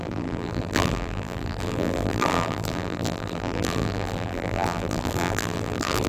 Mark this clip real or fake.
fake